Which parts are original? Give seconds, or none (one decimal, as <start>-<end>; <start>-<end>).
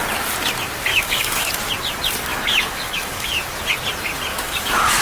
0.0-0.9; 1.5-2.3; 3.4-4.3